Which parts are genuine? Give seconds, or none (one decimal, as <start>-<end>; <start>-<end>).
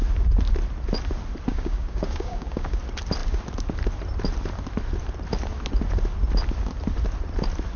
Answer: 0.0-1.5; 2.8-7.8